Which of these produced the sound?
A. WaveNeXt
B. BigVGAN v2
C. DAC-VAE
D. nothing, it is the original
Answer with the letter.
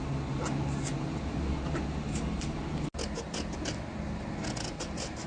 D